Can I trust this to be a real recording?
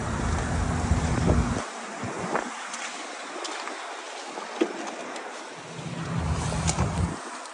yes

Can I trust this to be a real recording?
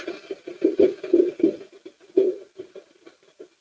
yes